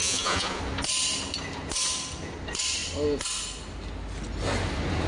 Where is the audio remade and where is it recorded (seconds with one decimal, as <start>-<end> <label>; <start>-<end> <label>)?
0.0-0.6 remade; 0.6-5.1 recorded